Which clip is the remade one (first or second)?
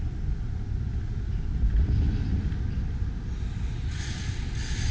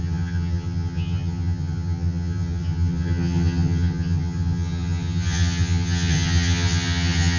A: second